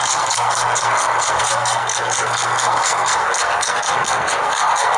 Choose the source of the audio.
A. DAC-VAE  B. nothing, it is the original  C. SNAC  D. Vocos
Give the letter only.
C